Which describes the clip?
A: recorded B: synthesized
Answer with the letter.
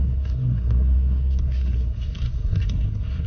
B